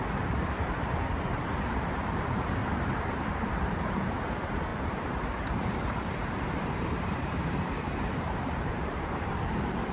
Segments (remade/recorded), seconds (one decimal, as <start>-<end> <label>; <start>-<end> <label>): 0.0-2.6 remade; 2.6-3.3 recorded; 3.3-9.9 remade